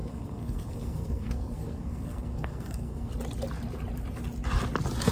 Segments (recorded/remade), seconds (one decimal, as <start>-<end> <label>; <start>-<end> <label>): 0.0-3.1 remade; 3.1-5.1 recorded

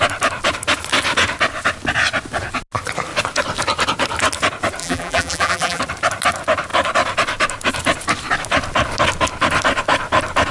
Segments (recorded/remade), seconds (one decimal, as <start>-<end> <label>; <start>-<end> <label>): 0.0-4.8 recorded; 4.8-5.8 remade; 5.8-10.5 recorded